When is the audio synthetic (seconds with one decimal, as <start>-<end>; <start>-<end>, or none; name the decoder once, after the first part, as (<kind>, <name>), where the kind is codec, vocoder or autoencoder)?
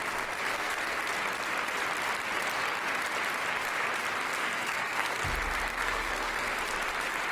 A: 0.5-1.0 (codec, SNAC); 4.4-5.2; 5.7-6.6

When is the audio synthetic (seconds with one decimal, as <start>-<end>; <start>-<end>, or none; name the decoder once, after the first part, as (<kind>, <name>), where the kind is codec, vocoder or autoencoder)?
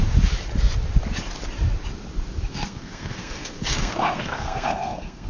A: 2.5-5.3 (codec, SNAC)